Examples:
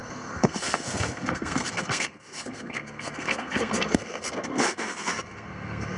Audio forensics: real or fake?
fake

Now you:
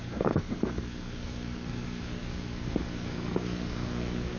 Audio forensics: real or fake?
fake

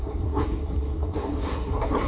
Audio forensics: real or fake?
fake